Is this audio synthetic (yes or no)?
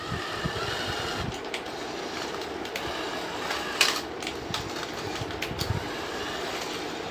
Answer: no